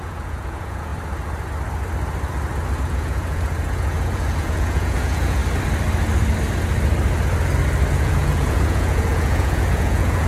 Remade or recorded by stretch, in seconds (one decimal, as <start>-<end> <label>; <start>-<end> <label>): 0.0-0.9 remade; 0.9-2.8 recorded; 2.8-5.4 remade; 5.4-7.9 recorded; 7.9-10.3 remade

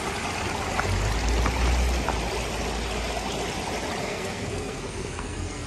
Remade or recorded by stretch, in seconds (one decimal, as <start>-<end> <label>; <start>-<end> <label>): 0.0-4.0 recorded; 4.0-5.7 remade